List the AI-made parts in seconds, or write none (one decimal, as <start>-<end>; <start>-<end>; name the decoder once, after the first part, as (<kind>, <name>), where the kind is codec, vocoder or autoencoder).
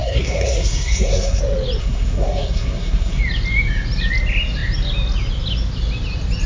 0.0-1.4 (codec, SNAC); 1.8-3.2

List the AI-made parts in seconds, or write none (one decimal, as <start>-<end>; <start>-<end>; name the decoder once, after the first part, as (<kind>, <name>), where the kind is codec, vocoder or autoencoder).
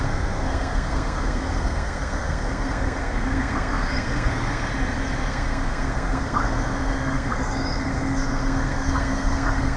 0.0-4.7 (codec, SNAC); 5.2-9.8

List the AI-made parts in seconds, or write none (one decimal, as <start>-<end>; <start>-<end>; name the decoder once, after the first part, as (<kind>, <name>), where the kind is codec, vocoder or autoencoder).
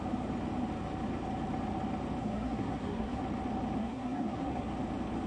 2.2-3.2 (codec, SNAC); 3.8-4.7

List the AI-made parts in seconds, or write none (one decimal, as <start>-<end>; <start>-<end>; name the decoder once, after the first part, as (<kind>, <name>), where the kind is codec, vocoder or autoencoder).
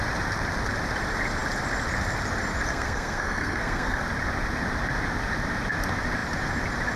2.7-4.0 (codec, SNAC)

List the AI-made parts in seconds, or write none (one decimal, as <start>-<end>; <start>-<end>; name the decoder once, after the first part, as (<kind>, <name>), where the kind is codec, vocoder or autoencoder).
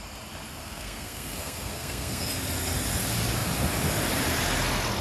0.6-2.3 (codec, SNAC)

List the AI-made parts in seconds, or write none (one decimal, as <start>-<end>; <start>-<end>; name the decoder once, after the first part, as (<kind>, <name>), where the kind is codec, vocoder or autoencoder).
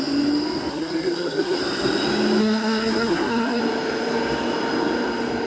0.7-1.6 (codec, SNAC); 2.4-3.6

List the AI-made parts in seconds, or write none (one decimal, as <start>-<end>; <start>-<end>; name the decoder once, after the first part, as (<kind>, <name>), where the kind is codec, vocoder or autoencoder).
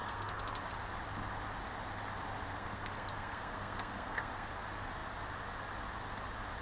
0.0-0.6 (codec, SNAC); 2.5-4.5